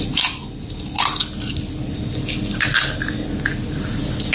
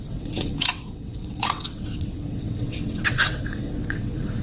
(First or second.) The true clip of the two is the first